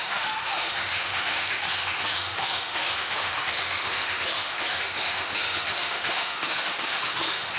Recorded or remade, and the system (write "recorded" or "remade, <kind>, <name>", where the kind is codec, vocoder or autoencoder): remade, autoencoder, DAC-VAE